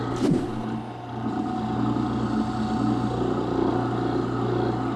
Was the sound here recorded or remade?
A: recorded